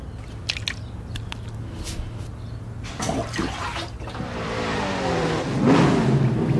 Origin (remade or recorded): recorded